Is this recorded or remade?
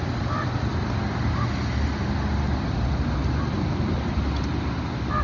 recorded